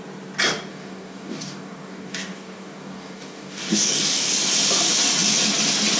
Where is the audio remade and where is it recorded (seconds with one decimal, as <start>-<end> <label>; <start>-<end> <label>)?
0.0-0.7 recorded; 0.7-4.3 remade; 4.3-6.0 recorded